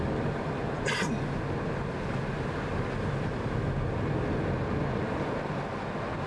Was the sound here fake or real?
real